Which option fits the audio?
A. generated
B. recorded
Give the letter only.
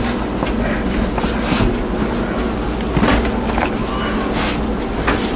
B